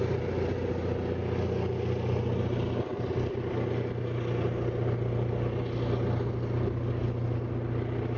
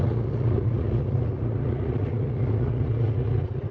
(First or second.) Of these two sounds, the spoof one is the second